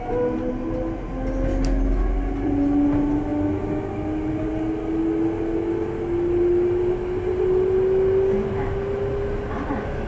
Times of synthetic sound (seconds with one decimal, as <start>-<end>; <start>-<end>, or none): none